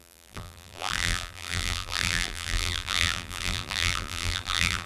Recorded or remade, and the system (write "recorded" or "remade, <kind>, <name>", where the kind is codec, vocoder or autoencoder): remade, vocoder, BigVGAN v2